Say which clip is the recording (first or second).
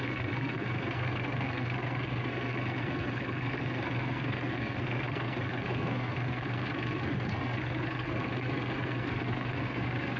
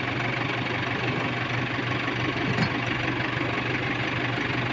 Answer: second